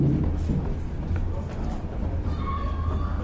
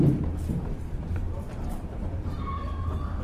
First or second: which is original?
first